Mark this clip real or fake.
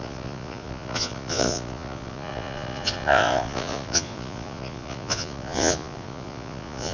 fake